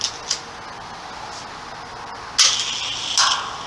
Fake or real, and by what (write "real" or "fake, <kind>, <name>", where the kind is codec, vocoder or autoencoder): real